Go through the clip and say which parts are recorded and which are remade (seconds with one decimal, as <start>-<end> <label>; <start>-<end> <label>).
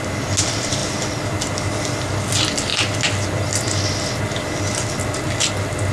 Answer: 0.0-5.9 recorded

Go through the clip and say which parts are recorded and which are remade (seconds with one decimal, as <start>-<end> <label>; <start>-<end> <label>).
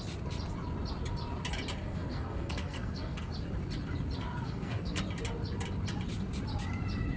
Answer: 0.0-1.9 recorded; 1.9-3.3 remade; 3.3-4.4 recorded; 4.4-5.0 remade; 5.0-7.2 recorded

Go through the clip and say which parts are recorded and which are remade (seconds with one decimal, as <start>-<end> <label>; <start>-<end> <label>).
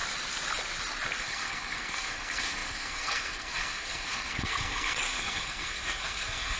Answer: 0.0-1.2 recorded; 1.2-6.6 remade